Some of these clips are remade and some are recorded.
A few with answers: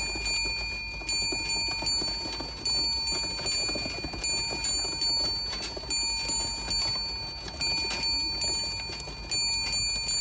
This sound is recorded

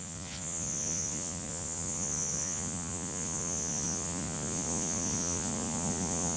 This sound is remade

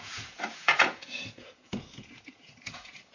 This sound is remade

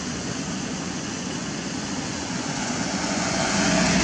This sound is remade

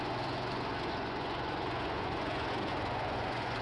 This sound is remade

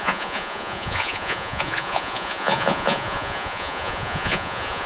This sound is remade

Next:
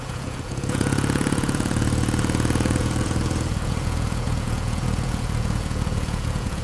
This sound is remade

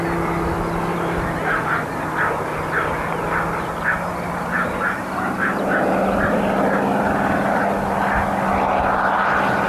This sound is recorded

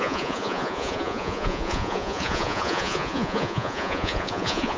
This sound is remade